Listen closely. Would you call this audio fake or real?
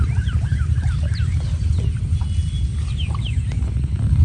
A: real